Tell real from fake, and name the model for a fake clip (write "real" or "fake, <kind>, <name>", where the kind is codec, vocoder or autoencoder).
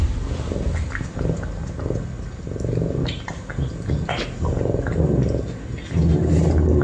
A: real